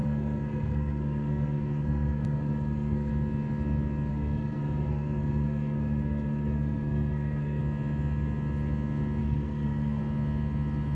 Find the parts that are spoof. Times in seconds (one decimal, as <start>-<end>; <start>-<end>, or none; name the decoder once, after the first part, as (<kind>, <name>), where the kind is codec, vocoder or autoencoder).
0.0-3.1 (codec, SNAC); 4.1-7.6; 9.2-10.0